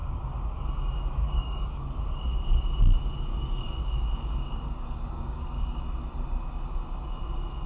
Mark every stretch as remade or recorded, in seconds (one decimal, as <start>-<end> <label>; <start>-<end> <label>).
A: 0.0-0.7 remade; 0.7-1.2 recorded; 1.2-2.4 remade; 2.4-3.3 recorded; 3.3-5.8 remade; 5.8-7.7 recorded